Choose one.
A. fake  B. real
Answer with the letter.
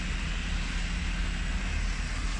B